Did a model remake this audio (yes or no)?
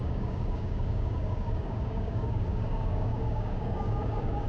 yes